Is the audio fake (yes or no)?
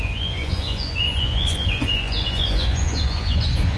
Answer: yes